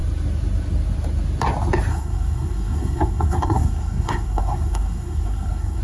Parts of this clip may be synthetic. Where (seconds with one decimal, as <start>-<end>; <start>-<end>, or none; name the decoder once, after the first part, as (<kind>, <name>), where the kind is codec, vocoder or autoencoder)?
1.9-5.8 (codec, SNAC)